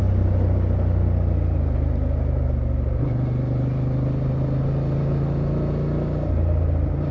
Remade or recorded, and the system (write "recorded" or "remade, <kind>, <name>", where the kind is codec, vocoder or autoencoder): recorded